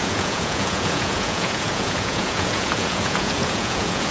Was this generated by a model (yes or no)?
yes